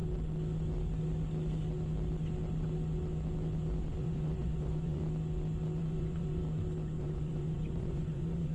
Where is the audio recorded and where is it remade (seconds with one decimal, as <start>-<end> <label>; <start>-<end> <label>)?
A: 0.0-4.0 recorded; 4.0-5.0 remade; 5.0-5.8 recorded; 5.8-6.4 remade; 6.4-7.0 recorded; 7.0-8.5 remade